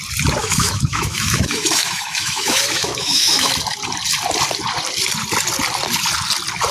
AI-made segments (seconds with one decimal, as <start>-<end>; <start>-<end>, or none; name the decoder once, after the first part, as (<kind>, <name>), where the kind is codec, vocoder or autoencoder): 0.4-3.5 (autoencoder, DAC-VAE)